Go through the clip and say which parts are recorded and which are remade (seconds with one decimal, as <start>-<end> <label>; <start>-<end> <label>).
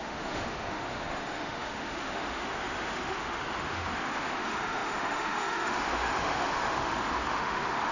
0.0-7.9 remade